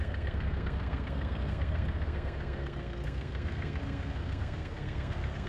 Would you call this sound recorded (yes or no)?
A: no